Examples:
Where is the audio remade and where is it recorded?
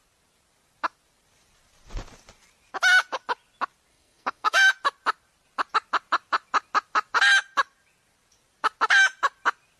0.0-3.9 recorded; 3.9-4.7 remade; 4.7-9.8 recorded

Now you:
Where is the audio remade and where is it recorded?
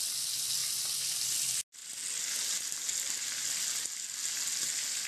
0.0-5.1 recorded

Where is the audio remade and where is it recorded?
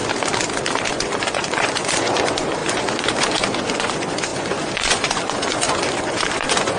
0.0-0.9 recorded; 0.9-6.8 remade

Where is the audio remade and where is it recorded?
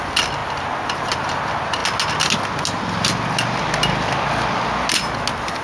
0.0-5.6 recorded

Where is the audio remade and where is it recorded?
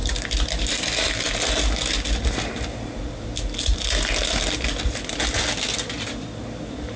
0.0-7.0 recorded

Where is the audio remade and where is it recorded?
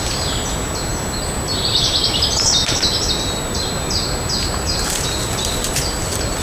0.0-6.4 recorded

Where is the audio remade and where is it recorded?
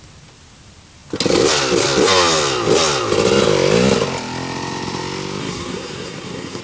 0.0-5.4 recorded; 5.4-6.6 remade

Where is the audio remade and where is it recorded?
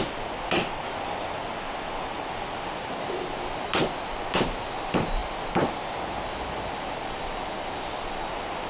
0.0-8.7 recorded